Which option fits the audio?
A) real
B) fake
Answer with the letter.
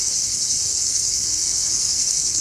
B